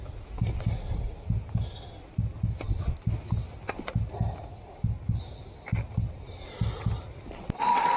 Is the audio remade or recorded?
recorded